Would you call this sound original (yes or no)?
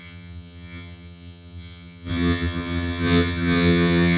no